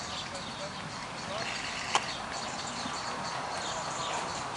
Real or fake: real